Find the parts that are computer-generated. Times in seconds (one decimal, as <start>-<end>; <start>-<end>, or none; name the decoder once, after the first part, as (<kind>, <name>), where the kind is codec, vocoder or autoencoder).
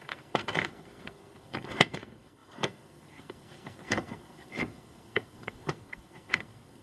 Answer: 0.0-6.8 (codec, SNAC)